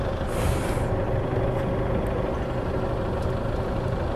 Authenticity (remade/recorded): recorded